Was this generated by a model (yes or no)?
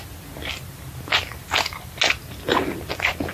no